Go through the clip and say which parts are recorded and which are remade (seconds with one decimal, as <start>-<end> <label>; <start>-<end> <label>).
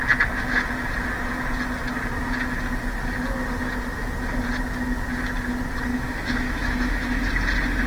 0.0-5.9 recorded; 5.9-7.3 remade; 7.3-7.9 recorded